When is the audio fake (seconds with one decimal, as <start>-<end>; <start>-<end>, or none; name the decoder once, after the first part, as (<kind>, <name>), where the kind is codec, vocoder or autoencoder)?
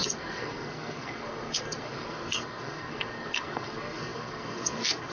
0.0-5.1 (codec, SNAC)